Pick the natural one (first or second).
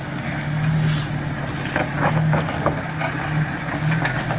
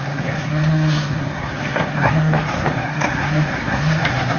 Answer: first